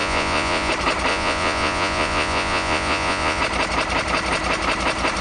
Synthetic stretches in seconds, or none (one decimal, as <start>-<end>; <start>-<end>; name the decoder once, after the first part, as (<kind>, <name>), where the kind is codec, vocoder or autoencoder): 0.0-0.7 (vocoder, Vocos); 1.1-3.4